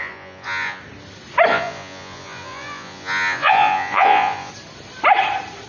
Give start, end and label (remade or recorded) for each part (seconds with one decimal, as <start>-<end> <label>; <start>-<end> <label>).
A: 0.0-0.8 remade; 0.8-1.5 recorded; 1.5-4.5 remade; 4.5-5.7 recorded

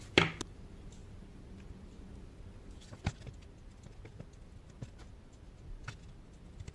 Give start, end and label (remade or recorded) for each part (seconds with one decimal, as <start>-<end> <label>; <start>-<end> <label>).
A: 0.0-6.7 recorded

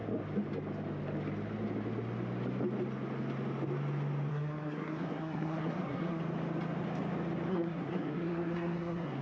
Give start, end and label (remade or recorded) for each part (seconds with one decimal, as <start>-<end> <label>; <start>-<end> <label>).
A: 0.0-4.3 recorded; 4.3-6.2 remade; 6.2-7.5 recorded; 7.5-9.2 remade

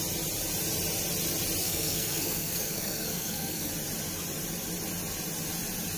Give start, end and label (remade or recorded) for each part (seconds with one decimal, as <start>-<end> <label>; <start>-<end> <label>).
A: 0.0-1.6 recorded; 1.6-3.7 remade; 3.7-6.0 recorded

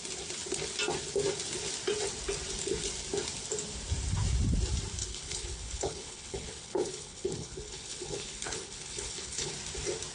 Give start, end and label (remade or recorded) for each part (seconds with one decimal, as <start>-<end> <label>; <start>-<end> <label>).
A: 0.0-5.0 recorded; 5.0-9.5 remade; 9.5-10.1 recorded